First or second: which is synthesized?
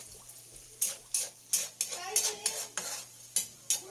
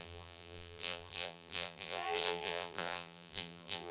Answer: second